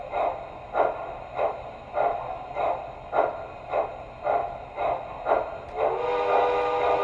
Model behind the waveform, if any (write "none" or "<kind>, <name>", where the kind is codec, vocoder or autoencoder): none